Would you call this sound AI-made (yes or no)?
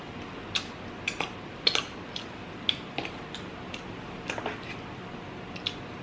no